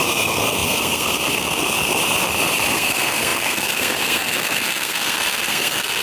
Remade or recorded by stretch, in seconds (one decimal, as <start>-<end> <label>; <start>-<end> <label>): 0.0-2.0 remade; 2.0-2.7 recorded; 2.7-6.0 remade